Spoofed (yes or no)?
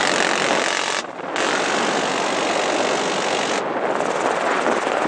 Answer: no